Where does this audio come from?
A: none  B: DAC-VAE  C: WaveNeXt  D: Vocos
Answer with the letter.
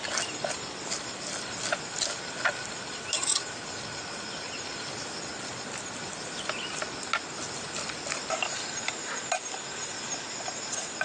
A